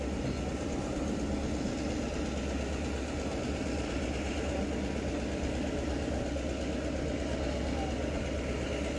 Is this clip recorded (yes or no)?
yes